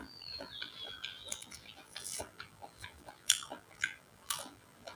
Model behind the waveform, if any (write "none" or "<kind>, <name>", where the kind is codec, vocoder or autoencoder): vocoder, BigVGAN v2